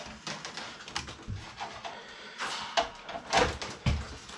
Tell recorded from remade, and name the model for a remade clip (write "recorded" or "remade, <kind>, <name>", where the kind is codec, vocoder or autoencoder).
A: recorded